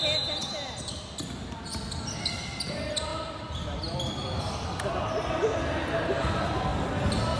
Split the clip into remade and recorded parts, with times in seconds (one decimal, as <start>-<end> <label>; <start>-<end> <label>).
0.0-7.4 recorded

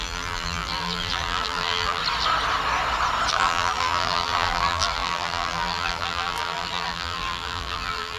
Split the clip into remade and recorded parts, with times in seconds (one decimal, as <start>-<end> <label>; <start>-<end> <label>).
0.0-2.0 remade; 2.0-3.3 recorded; 3.3-8.2 remade

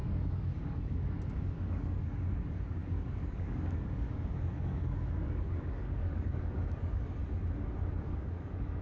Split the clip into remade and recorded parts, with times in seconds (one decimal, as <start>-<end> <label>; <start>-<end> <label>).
0.0-7.2 remade; 7.2-7.9 recorded; 7.9-8.8 remade